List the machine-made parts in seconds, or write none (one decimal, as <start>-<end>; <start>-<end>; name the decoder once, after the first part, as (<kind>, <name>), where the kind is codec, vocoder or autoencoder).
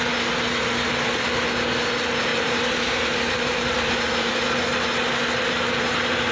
2.3-4.3 (vocoder, BigVGAN v2)